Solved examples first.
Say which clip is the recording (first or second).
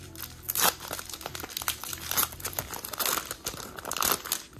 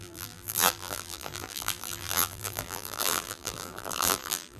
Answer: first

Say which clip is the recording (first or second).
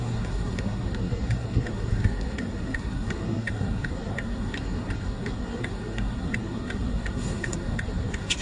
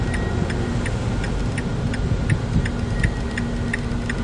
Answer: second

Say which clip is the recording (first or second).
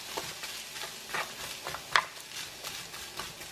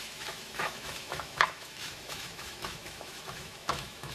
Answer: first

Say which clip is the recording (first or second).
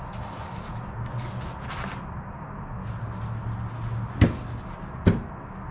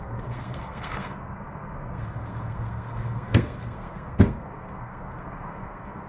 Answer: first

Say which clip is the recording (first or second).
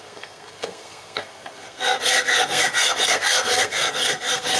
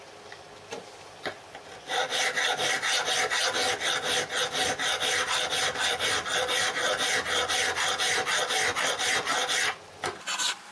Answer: second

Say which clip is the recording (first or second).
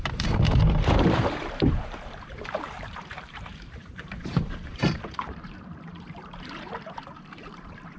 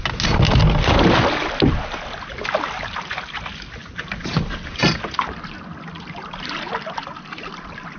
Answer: second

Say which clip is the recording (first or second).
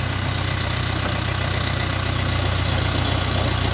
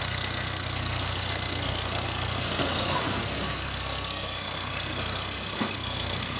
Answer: first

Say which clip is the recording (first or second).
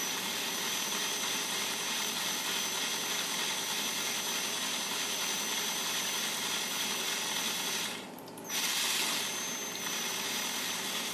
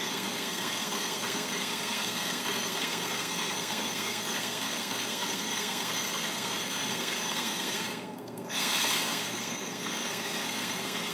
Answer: first